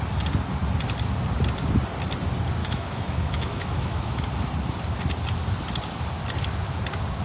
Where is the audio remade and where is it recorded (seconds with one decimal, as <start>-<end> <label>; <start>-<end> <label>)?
0.0-2.6 recorded; 2.6-4.2 remade; 4.2-7.2 recorded